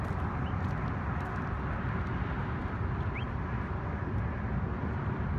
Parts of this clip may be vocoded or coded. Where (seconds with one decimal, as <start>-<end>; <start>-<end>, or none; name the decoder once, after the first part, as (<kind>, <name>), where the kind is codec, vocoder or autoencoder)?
none